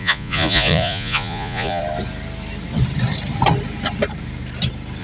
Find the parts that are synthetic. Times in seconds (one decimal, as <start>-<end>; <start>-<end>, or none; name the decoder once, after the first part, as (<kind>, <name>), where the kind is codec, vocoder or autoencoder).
0.0-1.8 (vocoder, Vocos)